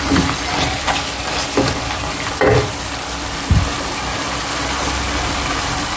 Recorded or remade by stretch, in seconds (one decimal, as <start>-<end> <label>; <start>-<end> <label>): 0.0-0.8 recorded; 0.8-4.4 remade; 4.4-6.0 recorded